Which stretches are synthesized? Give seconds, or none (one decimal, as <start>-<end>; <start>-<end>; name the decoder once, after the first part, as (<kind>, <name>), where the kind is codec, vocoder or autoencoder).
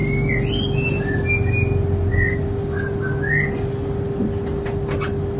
none